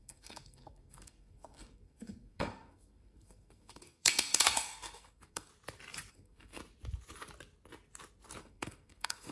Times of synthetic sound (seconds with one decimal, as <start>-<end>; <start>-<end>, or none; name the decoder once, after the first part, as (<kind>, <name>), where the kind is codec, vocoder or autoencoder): 0.0-5.5 (codec, SNAC); 6.1-6.6; 8.4-9.3